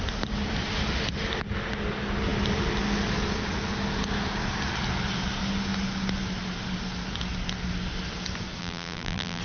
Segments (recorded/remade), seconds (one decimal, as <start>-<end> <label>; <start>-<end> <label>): 0.0-8.6 recorded; 8.6-9.4 remade